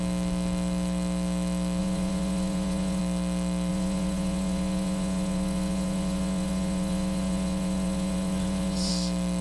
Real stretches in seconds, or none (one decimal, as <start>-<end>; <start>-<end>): 0.0-1.8; 3.0-3.7; 8.9-9.4